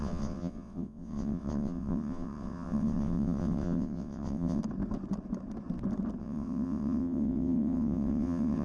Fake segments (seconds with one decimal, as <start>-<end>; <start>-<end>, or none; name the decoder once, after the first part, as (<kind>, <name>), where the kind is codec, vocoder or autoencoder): 0.0-4.6 (vocoder, WaveNeXt); 6.2-8.6